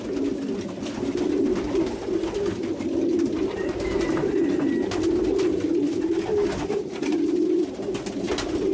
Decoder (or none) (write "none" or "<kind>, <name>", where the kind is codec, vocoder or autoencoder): none